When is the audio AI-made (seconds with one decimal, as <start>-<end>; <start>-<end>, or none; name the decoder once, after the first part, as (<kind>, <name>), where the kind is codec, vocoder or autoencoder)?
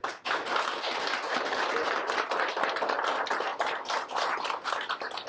none